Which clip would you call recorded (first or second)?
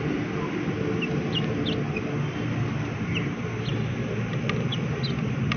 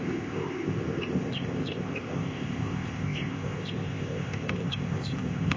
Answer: first